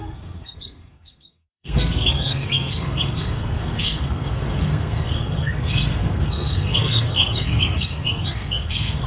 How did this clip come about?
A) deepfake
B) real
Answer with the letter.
A